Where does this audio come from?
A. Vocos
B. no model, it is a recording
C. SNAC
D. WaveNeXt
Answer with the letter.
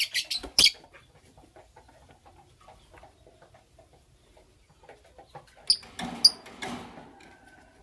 B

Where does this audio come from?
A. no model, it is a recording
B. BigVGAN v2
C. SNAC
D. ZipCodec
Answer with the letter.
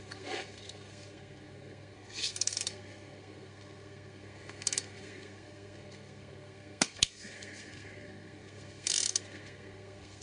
C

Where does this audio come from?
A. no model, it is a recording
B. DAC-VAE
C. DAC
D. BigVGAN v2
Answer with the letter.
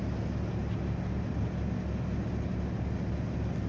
A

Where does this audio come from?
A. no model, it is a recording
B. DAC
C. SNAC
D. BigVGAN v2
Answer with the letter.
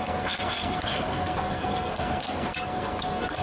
C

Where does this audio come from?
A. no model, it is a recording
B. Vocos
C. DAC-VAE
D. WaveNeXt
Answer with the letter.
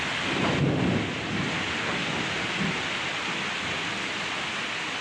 A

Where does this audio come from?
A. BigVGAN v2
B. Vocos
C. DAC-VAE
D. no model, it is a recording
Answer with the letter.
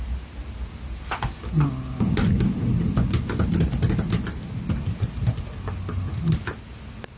D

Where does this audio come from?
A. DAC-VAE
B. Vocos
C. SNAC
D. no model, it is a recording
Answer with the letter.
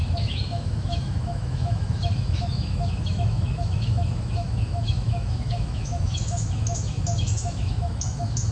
A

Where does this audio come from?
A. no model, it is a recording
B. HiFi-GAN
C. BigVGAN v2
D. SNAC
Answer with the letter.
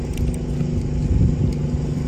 A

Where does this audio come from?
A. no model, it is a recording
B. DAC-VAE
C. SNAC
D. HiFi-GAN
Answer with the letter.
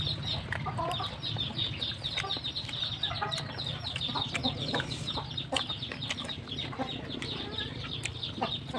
A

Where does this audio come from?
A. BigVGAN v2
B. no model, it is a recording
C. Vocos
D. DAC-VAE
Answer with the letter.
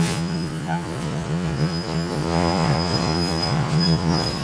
C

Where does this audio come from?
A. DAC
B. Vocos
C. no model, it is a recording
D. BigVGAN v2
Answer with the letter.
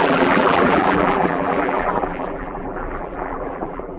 D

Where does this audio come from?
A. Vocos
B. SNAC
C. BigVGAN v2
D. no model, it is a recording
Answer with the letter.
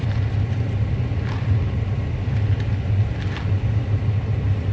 D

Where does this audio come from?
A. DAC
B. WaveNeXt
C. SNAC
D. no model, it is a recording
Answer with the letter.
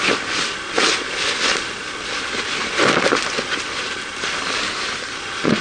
D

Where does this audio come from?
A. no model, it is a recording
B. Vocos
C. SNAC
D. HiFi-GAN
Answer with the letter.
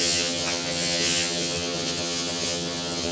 D